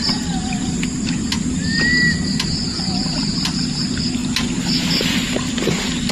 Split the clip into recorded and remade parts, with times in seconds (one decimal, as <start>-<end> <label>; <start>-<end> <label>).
0.0-6.1 recorded